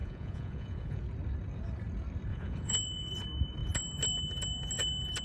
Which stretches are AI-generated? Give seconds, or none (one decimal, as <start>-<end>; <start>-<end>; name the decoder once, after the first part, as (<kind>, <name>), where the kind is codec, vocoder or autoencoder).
0.0-1.0 (vocoder, Vocos); 2.3-3.1